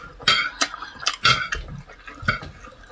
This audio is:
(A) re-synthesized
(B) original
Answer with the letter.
B